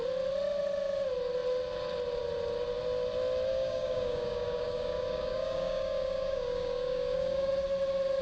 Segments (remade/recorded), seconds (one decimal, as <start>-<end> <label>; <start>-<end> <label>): 0.0-3.5 recorded; 3.5-7.5 remade; 7.5-8.2 recorded